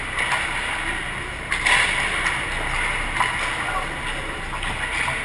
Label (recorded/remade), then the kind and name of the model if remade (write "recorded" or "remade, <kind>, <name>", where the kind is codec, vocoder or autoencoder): recorded